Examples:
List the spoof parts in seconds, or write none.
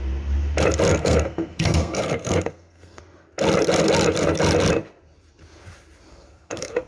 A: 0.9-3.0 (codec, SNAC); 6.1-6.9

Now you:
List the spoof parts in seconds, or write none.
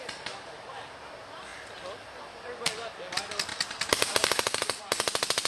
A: none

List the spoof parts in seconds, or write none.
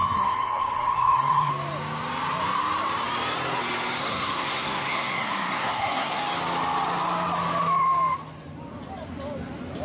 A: 0.0-1.5 (codec, SNAC); 4.0-6.2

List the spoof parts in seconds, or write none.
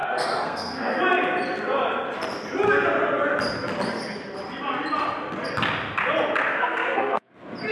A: 0.0-1.0 (codec, SNAC); 6.5-7.3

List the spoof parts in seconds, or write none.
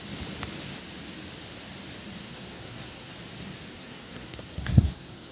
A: 2.2-3.1 (codec, SNAC); 3.7-5.3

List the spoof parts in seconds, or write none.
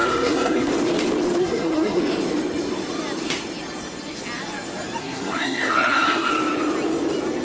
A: 0.0-0.7 (codec, SNAC); 1.4-2.0; 5.0-6.3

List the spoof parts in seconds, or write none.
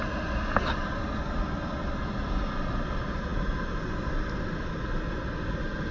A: none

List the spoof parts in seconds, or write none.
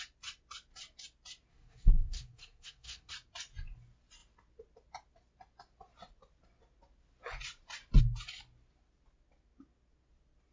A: 1.5-3.1 (codec, SNAC)